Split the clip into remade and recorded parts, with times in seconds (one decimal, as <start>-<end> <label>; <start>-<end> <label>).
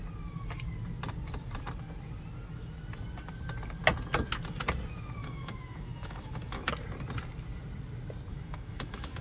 0.0-5.2 recorded; 5.2-6.7 remade; 6.7-8.3 recorded; 8.3-9.2 remade